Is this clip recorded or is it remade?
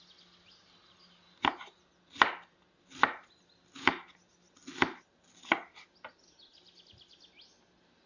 recorded